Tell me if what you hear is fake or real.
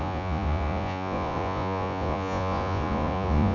fake